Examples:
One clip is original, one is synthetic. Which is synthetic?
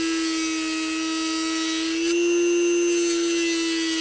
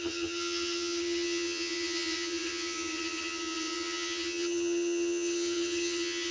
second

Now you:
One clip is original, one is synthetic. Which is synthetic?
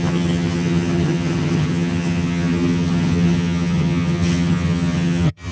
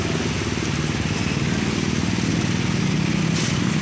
first